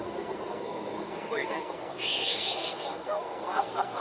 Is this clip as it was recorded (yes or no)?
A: no